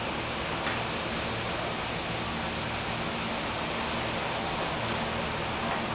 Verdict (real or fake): real